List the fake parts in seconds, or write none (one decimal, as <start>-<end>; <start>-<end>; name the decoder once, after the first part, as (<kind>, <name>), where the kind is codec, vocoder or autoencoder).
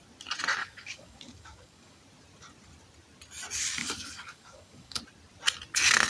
0.6-2.0 (codec, DAC); 3.8-5.0